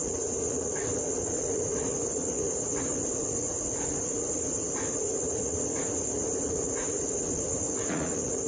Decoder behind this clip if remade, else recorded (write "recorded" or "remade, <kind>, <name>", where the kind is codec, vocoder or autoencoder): remade, vocoder, Vocos